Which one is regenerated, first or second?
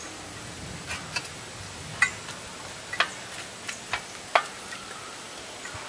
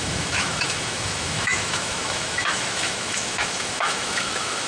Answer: second